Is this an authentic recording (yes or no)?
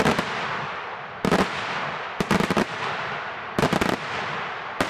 yes